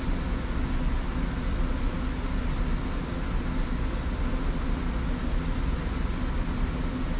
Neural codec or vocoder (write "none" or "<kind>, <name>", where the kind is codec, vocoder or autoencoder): none